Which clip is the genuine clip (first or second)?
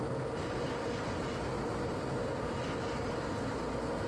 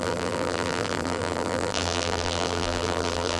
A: first